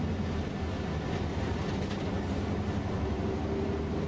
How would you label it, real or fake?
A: real